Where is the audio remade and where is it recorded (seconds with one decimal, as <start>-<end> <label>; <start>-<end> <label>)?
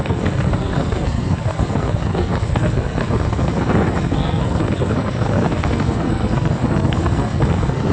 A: 0.0-7.9 remade